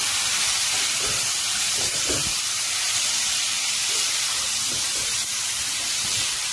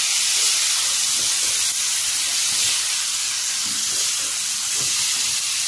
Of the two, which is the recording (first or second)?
second